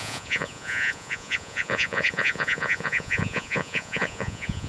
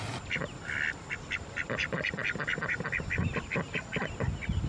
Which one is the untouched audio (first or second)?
second